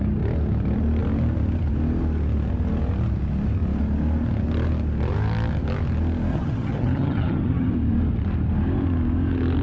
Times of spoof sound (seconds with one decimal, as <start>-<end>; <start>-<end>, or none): 6.3-7.7